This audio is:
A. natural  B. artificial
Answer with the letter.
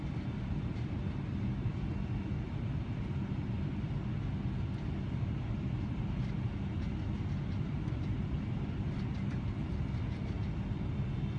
A